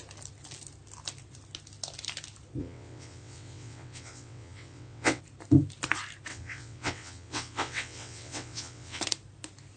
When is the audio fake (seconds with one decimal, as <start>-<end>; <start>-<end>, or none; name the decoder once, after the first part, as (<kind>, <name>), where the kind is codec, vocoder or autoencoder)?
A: 2.6-5.2 (vocoder, WaveNeXt); 6.3-9.0